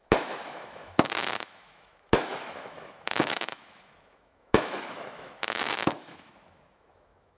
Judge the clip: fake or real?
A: fake